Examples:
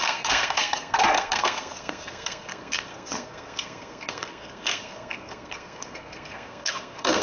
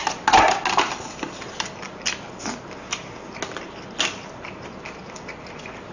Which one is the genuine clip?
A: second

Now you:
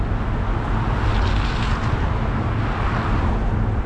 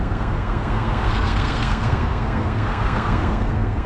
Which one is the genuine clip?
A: first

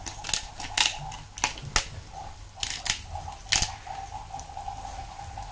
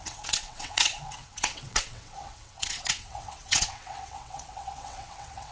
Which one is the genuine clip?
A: first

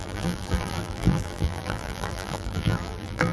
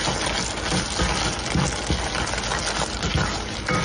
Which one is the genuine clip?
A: second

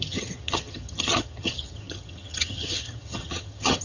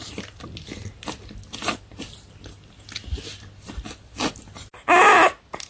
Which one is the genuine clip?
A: second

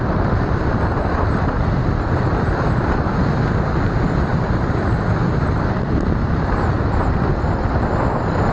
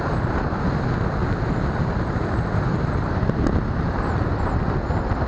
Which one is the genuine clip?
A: second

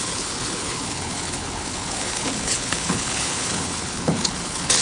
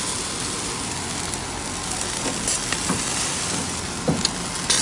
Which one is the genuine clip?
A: second